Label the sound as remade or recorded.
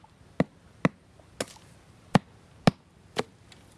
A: recorded